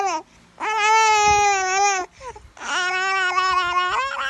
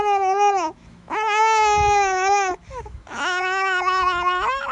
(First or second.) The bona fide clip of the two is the first